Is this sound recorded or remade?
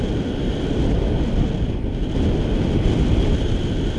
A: recorded